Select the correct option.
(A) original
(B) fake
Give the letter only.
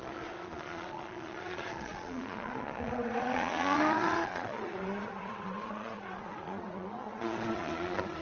B